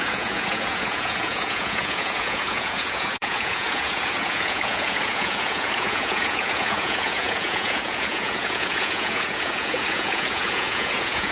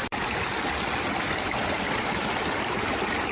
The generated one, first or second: first